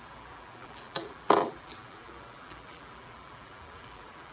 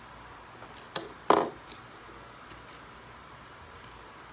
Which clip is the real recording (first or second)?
second